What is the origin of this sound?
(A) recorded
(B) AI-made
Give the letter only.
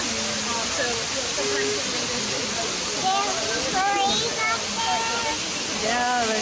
A